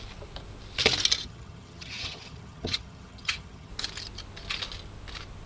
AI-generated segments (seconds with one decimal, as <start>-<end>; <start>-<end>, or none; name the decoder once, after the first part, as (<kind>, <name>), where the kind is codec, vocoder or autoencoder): 1.2-3.7 (vocoder, HiFi-GAN)